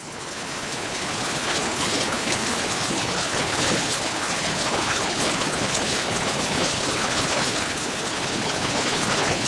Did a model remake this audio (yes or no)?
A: yes